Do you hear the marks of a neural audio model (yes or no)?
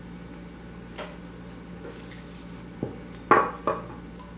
no